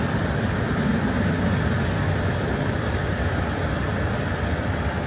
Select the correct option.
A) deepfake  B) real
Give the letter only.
B